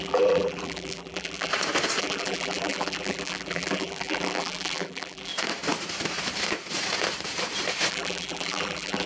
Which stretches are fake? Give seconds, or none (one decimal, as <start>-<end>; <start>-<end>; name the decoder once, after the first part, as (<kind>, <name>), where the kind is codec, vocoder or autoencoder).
0.0-1.5 (vocoder, BigVGAN v2); 2.0-5.3; 7.9-9.1